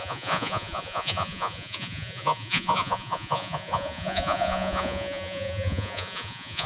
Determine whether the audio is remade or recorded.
remade